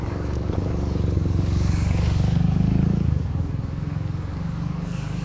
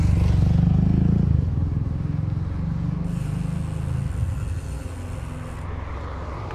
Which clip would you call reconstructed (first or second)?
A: first